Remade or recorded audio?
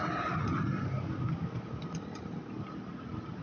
recorded